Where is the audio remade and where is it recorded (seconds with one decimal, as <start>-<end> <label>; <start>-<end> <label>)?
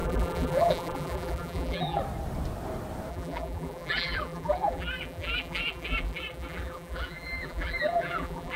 0.0-2.0 remade; 2.0-3.1 recorded; 3.1-8.6 remade